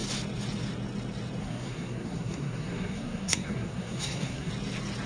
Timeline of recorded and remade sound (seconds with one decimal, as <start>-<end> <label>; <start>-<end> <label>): 0.0-1.4 recorded; 1.4-4.5 remade; 4.5-5.1 recorded